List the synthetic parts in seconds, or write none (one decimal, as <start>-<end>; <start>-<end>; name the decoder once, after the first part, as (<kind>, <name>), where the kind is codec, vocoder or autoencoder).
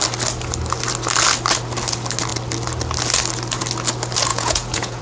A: 4.3-5.0 (vocoder, Vocos)